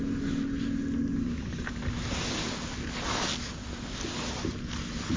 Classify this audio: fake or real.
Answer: real